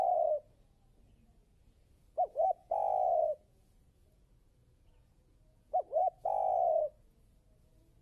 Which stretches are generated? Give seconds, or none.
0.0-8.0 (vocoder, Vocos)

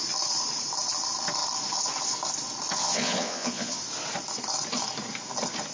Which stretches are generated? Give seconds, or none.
2.8-3.8 (vocoder, Vocos)

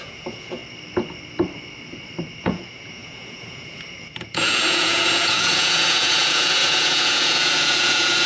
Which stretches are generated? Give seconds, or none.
0.0-0.6 (vocoder, Vocos); 2.4-8.3